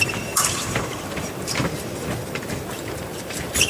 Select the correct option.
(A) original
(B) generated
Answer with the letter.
B